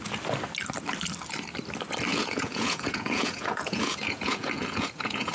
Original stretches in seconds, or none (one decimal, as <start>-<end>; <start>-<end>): 0.0-2.1